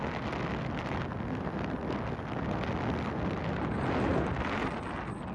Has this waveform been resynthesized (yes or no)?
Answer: no